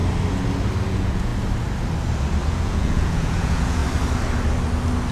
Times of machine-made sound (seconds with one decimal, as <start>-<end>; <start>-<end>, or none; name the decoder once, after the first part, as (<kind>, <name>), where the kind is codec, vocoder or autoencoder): 0.9-1.3 (vocoder, Vocos); 2.5-3.8